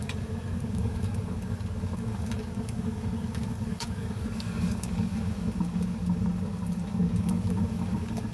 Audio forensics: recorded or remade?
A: remade